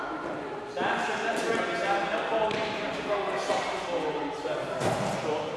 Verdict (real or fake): real